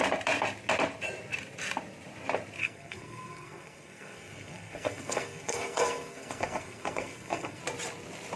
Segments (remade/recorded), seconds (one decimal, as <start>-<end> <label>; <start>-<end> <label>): 0.0-2.6 recorded; 2.6-7.6 remade; 7.6-8.4 recorded